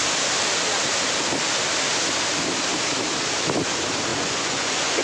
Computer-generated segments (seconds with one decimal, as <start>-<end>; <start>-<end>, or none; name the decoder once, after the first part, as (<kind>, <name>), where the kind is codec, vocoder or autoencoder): 4.1-5.0 (vocoder, Vocos)